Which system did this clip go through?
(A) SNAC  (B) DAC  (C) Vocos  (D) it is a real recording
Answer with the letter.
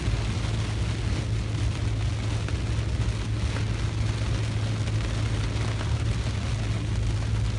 D